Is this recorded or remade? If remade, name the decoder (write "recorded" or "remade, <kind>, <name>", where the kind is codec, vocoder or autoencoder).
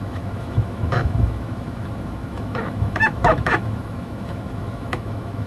remade, autoencoder, DAC-VAE